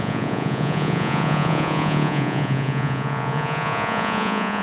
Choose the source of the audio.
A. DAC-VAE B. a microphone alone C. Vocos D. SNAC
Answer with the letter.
C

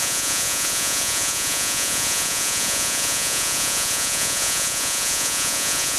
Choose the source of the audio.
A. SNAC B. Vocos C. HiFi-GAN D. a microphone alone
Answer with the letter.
B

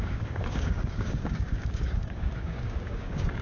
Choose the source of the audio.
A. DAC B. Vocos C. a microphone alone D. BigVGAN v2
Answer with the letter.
A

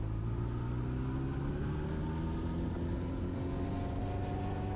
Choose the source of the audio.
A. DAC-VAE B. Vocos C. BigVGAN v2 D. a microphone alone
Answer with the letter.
D